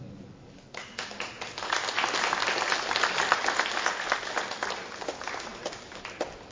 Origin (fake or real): real